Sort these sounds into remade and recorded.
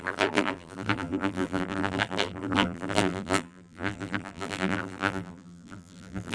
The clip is remade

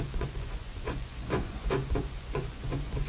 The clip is remade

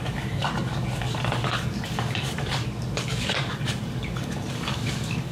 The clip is remade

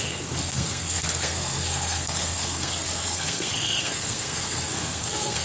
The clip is remade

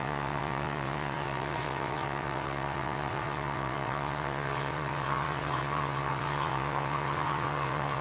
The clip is remade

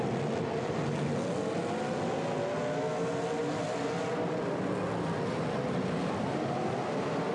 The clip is recorded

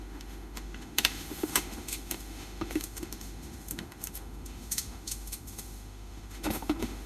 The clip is remade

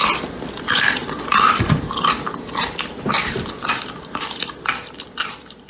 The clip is remade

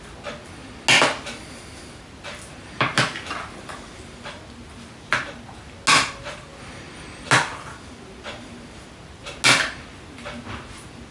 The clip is recorded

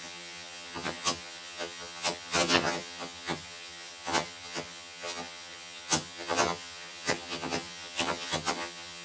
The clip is remade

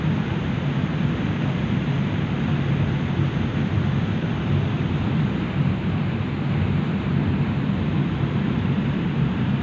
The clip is remade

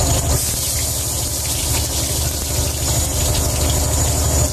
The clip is recorded